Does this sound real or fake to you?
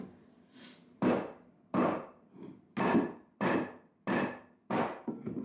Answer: real